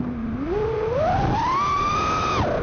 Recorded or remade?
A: recorded